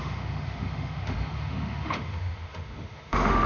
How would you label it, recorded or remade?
remade